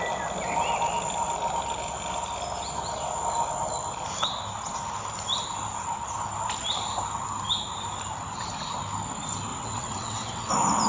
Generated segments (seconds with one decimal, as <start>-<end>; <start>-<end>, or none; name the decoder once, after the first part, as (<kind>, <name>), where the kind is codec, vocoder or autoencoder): 9.5-10.5 (vocoder, WaveNeXt)